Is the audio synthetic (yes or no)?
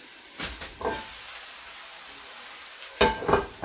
no